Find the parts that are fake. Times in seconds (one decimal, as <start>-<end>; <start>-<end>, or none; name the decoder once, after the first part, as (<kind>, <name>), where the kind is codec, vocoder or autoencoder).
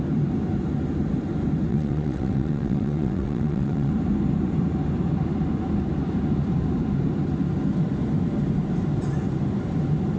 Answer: 1.7-3.9 (vocoder, WaveNeXt)